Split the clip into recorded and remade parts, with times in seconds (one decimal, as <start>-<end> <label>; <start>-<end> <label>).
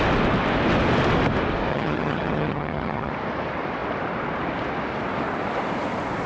0.0-1.7 recorded; 1.7-3.1 remade; 3.1-6.3 recorded